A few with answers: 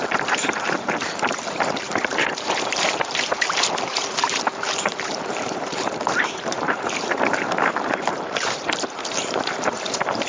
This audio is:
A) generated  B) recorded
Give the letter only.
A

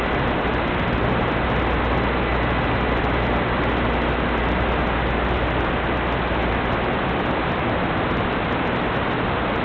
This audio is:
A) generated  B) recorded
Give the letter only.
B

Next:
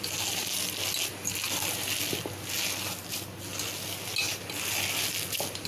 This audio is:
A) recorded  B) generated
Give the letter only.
A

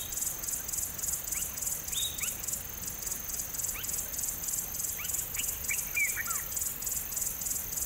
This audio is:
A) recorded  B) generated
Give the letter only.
A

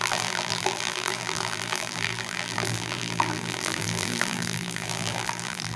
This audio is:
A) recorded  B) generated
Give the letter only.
B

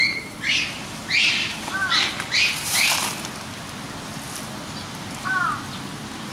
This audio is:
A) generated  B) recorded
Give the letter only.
B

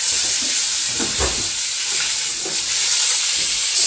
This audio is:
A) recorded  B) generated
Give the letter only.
B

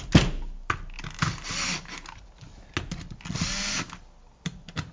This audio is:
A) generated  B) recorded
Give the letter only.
B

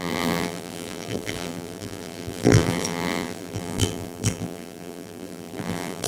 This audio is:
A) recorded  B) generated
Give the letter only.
B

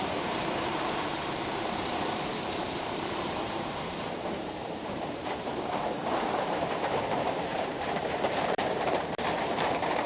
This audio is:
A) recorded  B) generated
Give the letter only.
B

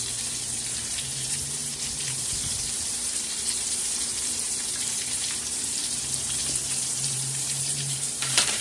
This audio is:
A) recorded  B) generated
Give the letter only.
B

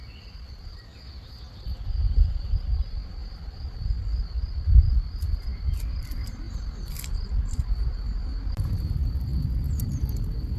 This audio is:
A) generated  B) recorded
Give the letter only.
B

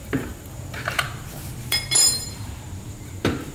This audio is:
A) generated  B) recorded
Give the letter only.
A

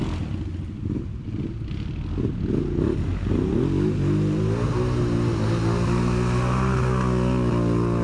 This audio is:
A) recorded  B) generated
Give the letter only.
A